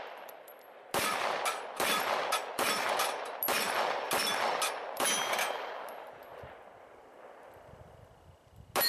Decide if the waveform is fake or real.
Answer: real